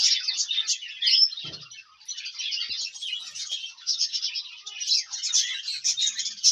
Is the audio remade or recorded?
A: recorded